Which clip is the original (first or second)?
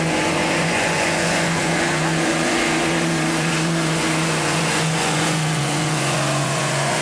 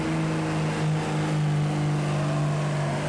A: second